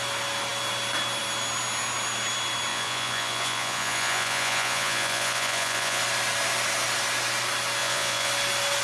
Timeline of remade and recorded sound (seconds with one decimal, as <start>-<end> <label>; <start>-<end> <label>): 0.0-2.7 recorded; 2.7-6.0 remade; 6.0-7.8 recorded; 7.8-8.3 remade; 8.3-8.8 recorded